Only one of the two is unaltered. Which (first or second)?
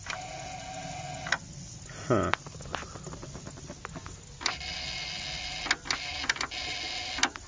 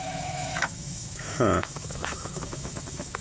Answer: first